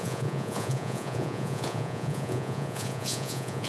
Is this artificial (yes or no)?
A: yes